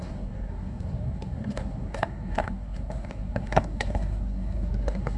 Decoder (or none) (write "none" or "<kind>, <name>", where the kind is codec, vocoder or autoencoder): codec, SNAC